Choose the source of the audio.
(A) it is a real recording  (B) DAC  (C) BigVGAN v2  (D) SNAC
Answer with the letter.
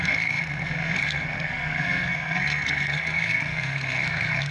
D